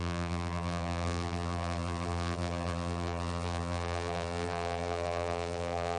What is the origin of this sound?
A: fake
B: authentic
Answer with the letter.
A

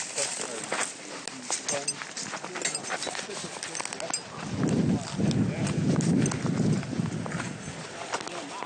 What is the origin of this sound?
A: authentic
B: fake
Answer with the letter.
A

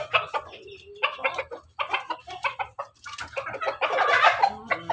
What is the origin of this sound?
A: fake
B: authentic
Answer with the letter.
B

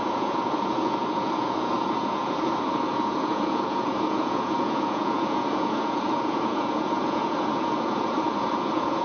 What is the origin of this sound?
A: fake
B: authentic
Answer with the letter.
A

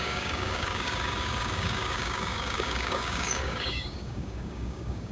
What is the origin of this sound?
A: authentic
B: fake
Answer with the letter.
B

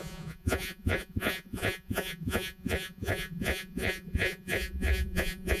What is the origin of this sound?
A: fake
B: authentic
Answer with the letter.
A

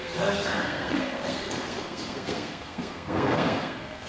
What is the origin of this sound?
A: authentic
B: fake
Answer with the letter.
B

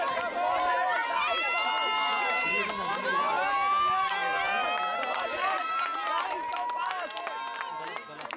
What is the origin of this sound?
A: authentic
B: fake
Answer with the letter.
A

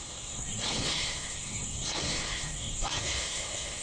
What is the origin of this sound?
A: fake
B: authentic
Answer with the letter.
A